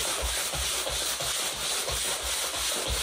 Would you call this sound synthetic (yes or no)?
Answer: no